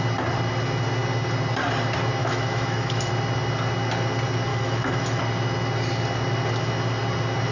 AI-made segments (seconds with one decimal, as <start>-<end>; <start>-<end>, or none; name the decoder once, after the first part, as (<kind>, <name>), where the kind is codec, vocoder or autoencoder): 2.2-3.1 (autoencoder, DAC-VAE); 4.5-5.2